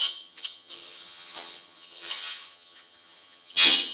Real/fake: fake